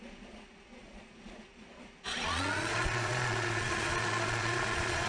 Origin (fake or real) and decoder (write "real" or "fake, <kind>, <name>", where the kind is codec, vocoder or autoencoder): fake, vocoder, Vocos